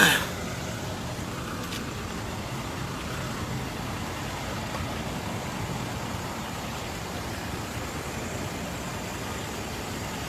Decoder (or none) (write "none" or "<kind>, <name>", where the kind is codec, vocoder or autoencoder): none